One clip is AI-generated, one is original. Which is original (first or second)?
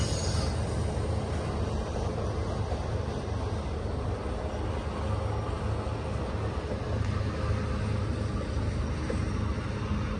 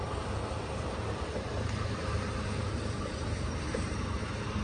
first